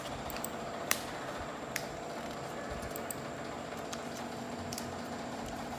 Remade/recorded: recorded